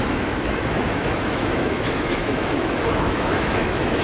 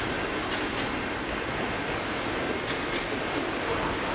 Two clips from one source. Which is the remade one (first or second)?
first